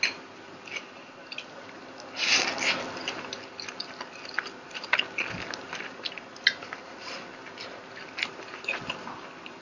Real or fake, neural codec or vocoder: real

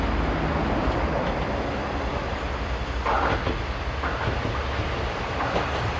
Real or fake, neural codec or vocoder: real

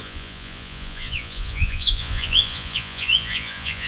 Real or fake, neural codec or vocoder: fake, vocoder, Vocos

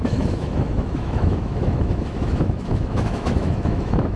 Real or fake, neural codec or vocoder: fake, autoencoder, DAC-VAE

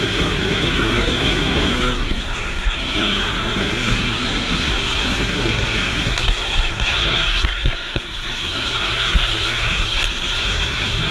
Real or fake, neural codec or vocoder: fake, codec, SNAC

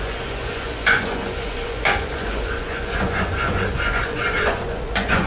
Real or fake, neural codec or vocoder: fake, vocoder, Vocos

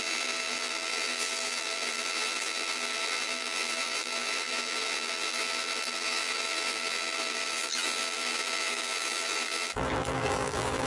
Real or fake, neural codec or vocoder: fake, vocoder, BigVGAN v2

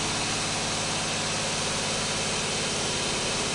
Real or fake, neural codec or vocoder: real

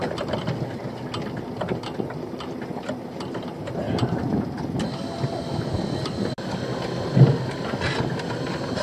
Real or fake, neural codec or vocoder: real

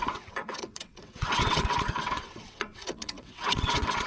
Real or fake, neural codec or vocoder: fake, vocoder, WaveNeXt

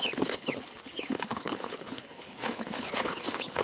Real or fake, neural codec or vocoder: fake, codec, HILCodec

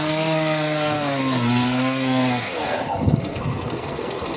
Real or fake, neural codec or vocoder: fake, codec, SNAC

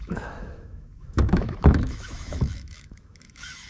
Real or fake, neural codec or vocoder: fake, autoencoder, DAC-VAE